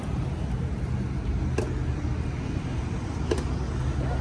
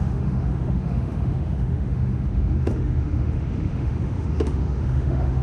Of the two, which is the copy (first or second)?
second